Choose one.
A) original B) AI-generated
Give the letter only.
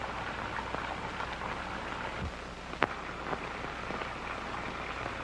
A